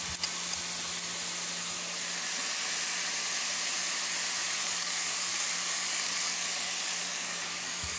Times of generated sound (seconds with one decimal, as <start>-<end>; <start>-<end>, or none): 4.4-8.0